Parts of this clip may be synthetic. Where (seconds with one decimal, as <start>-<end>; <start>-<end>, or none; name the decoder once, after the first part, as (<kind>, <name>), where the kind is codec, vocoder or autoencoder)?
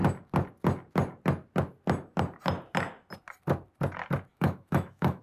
4.3-5.2 (autoencoder, DAC-VAE)